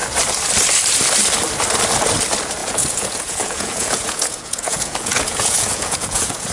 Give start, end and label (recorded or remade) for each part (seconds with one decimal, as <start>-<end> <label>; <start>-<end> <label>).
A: 0.0-2.6 recorded; 2.6-6.5 remade